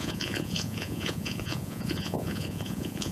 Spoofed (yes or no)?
yes